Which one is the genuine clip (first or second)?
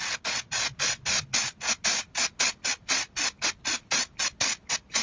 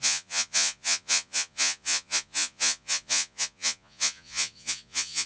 first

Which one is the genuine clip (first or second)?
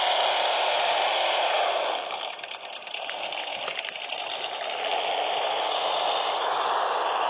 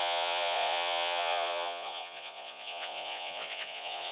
first